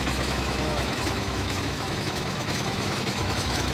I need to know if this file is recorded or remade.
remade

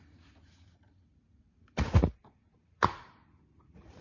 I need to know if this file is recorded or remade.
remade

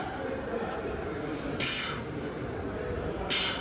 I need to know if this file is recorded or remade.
recorded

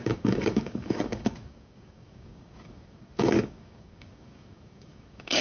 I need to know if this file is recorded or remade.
remade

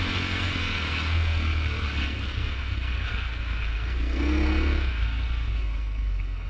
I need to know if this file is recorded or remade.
remade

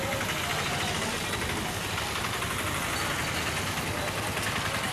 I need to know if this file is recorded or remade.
recorded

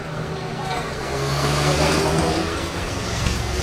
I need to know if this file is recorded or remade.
remade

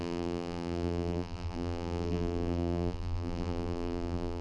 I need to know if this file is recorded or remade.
remade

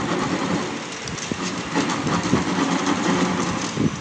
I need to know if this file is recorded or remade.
recorded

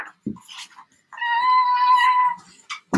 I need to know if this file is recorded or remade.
recorded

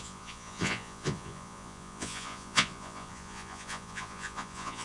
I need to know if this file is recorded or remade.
remade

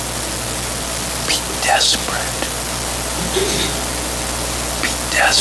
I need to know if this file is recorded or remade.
recorded